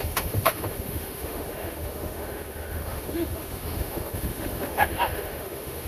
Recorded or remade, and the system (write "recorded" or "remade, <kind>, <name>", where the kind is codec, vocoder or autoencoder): remade, autoencoder, DAC-VAE